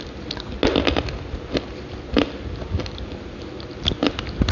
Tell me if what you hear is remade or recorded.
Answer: recorded